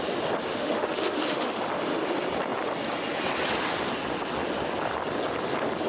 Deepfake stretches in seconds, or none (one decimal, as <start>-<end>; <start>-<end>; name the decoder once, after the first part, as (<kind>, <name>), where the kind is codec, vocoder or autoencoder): 0.5-1.6 (autoencoder, DAC-VAE)